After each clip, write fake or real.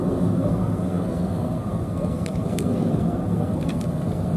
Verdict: fake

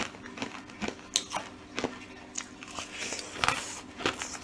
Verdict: real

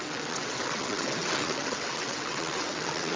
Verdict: fake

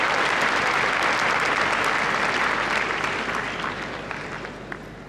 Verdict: real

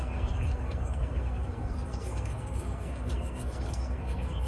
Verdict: fake